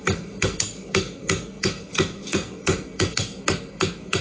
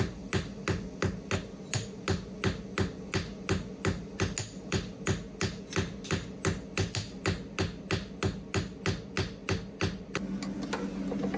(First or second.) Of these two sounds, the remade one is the first